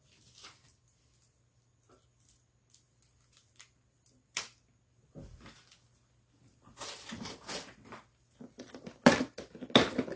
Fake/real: real